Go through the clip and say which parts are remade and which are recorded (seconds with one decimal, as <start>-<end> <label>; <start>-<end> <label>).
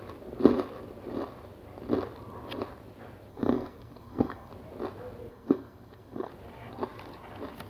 0.0-3.3 recorded; 3.3-4.5 remade; 4.5-5.3 recorded; 5.3-6.3 remade; 6.3-7.7 recorded